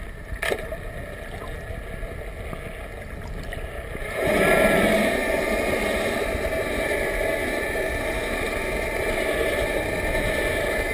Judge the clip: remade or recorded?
recorded